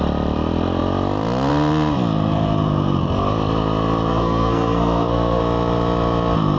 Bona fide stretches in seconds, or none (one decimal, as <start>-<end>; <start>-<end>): 0.0-4.1; 5.4-6.6